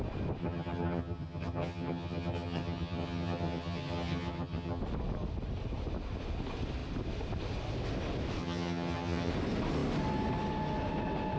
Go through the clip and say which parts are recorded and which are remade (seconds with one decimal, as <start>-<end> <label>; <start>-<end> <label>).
0.0-0.4 recorded; 0.4-4.8 remade; 4.8-8.4 recorded; 8.4-9.3 remade; 9.3-11.4 recorded